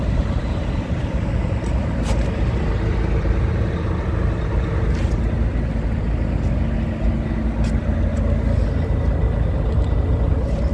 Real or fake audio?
real